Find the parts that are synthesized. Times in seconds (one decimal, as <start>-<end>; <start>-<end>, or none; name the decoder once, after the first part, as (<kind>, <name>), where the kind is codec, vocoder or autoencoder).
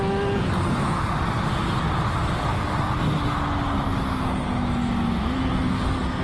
none